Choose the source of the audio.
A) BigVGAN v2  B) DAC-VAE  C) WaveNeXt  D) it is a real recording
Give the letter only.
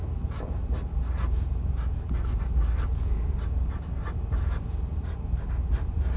A